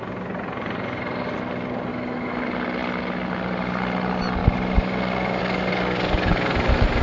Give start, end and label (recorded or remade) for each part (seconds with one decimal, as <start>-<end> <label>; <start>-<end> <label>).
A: 0.0-1.9 recorded; 1.9-2.4 remade; 2.4-7.0 recorded